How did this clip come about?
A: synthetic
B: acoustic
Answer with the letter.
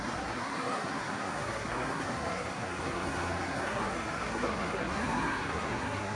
A